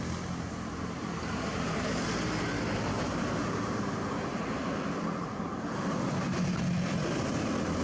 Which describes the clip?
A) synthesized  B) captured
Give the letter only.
A